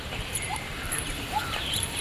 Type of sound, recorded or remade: remade